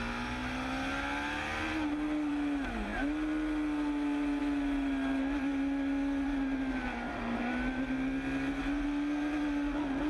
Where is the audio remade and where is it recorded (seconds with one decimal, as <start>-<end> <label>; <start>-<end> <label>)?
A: 0.0-10.1 recorded